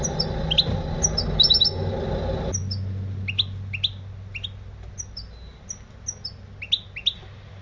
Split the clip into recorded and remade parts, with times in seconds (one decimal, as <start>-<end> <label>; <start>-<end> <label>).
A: 0.0-7.6 recorded